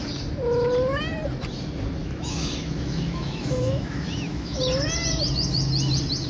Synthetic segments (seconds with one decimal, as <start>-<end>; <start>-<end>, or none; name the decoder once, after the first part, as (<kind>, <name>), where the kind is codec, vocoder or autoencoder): 2.0-4.6 (autoencoder, DAC-VAE)